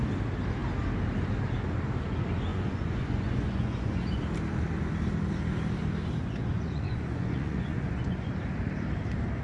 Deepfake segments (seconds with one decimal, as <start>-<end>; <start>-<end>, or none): 2.5-4.2; 6.2-8.3